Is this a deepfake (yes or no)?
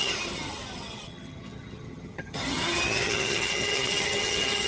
yes